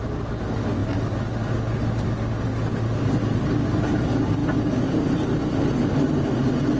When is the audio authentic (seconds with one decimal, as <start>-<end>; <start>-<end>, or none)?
0.0-6.8